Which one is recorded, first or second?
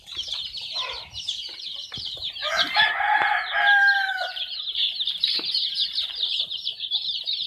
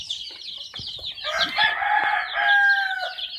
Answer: second